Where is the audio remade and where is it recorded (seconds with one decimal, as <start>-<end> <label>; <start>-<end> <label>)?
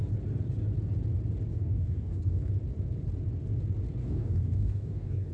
0.0-1.5 recorded; 1.5-2.5 remade; 2.5-4.0 recorded; 4.0-5.3 remade